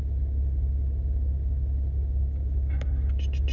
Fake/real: real